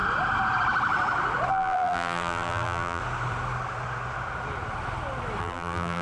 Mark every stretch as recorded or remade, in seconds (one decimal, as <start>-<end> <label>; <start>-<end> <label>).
0.0-1.5 recorded; 1.5-3.0 remade; 3.0-5.4 recorded; 5.4-6.0 remade